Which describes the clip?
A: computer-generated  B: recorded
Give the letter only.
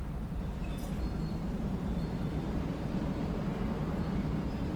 A